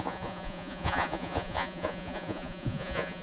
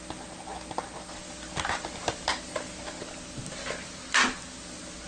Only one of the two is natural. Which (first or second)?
second